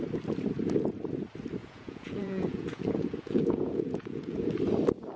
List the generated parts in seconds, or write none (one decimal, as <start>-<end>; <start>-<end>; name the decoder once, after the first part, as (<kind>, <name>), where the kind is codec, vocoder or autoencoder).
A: 1.6-4.5 (vocoder, Vocos)

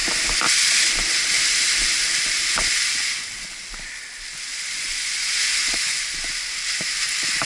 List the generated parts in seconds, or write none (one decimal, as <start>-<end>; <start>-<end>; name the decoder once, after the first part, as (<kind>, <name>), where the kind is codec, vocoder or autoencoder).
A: 4.5-6.1 (vocoder, Vocos)

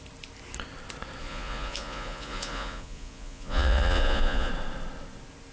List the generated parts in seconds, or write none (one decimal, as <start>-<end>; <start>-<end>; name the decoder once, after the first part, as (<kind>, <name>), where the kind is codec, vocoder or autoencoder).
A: 1.2-4.5 (vocoder, Vocos)

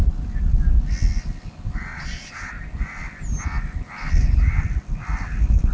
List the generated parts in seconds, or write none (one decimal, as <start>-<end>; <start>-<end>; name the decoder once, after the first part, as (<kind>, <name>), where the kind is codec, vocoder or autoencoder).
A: 1.9-2.5 (vocoder, Vocos)

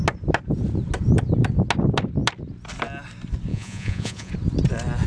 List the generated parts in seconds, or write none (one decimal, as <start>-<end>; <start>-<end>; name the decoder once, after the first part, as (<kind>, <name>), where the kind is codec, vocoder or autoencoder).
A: 3.5-4.3 (vocoder, Vocos)